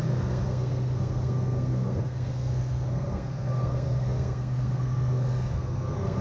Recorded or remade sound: remade